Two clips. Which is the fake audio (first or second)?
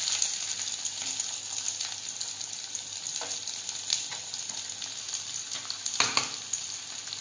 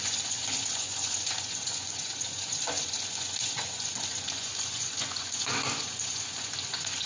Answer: second